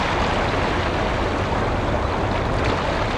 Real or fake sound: real